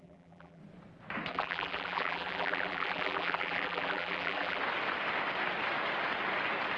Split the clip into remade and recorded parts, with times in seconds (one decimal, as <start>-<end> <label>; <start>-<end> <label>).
0.0-0.6 remade; 0.6-1.3 recorded; 1.3-4.6 remade; 4.6-6.8 recorded